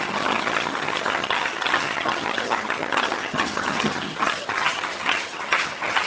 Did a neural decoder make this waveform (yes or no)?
yes